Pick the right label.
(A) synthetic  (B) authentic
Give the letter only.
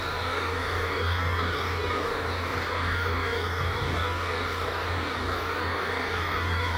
A